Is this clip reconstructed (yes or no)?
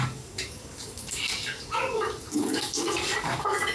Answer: yes